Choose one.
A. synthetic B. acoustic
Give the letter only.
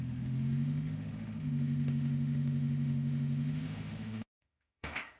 A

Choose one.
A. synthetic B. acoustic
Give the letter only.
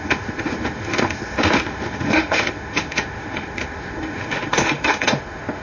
A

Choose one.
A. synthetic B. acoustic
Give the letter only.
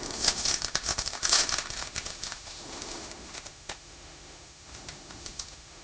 A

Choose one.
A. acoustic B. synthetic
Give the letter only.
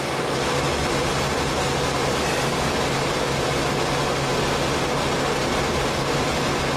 A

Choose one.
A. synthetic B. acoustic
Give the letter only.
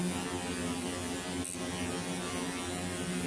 B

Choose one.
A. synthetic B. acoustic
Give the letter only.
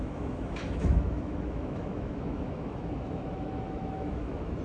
A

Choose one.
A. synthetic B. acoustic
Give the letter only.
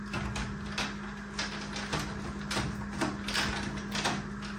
B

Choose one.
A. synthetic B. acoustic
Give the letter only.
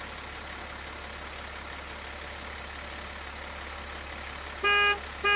B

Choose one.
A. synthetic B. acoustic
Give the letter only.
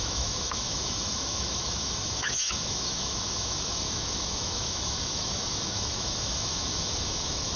A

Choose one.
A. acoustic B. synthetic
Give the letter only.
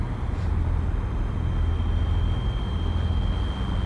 A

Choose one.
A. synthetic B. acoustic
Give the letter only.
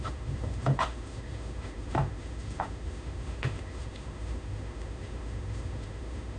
A